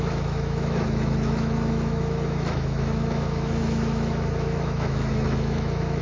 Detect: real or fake fake